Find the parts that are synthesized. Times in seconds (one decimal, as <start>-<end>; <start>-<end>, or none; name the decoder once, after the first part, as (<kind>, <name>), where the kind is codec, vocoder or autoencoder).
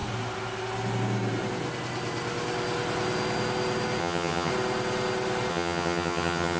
4.0-4.5 (vocoder, HiFi-GAN); 5.5-6.6